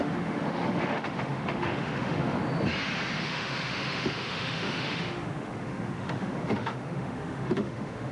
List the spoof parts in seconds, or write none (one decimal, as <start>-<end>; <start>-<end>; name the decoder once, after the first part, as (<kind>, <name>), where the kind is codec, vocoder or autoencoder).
0.0-2.4 (autoencoder, DAC-VAE); 3.2-8.1